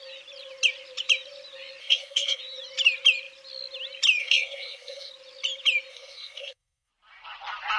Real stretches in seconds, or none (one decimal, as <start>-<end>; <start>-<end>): 0.0-1.8; 2.4-4.2; 5.1-5.9; 6.9-7.8